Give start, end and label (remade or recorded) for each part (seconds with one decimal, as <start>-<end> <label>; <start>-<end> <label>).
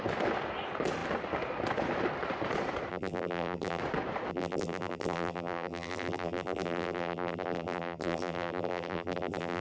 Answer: 0.0-2.9 recorded; 2.9-3.8 remade; 3.8-4.3 recorded; 4.3-9.6 remade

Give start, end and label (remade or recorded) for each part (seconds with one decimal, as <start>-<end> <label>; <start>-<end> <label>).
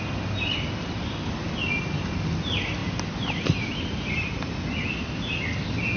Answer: 0.0-6.0 recorded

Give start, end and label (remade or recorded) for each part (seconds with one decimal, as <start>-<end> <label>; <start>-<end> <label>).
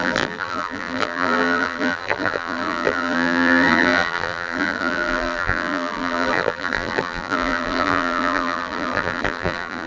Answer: 0.0-9.9 remade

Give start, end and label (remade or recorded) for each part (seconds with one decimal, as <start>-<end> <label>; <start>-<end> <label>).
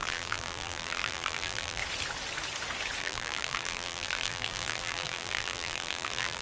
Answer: 0.0-1.8 remade; 1.8-3.0 recorded; 3.0-6.4 remade